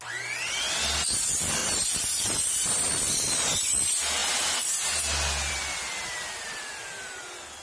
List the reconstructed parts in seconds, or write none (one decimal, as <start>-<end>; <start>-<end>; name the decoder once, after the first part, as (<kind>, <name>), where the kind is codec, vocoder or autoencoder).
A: 1.6-2.9 (vocoder, BigVGAN v2)